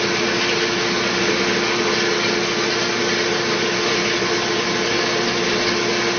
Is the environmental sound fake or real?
real